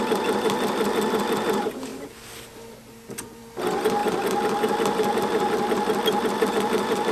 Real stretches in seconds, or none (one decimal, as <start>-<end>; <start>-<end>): 0.0-7.1